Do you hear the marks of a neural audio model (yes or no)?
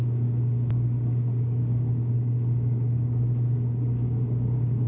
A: yes